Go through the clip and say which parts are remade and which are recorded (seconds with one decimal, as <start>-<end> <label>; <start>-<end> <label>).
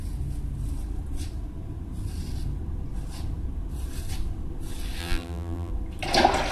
0.0-5.0 recorded; 5.0-5.7 remade; 5.7-6.5 recorded